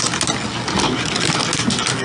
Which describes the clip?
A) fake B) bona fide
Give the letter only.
B